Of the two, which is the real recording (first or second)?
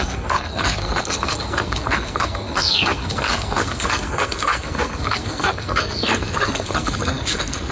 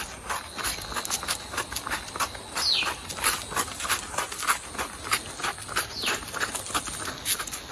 second